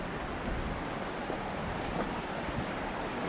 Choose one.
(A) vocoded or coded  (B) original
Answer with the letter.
B